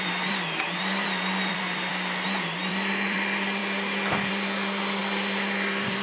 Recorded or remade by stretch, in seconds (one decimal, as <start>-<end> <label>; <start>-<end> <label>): 0.0-1.9 remade; 1.9-2.7 recorded; 2.7-3.6 remade; 3.6-4.3 recorded; 4.3-6.0 remade